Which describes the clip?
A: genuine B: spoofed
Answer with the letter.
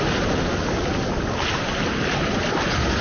A